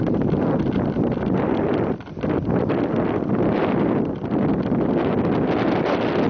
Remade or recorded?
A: recorded